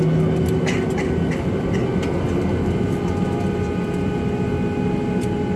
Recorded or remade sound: recorded